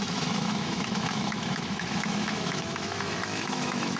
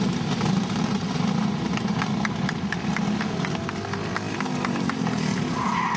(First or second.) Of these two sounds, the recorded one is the second